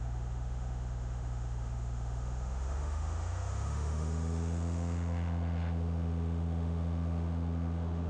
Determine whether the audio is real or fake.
fake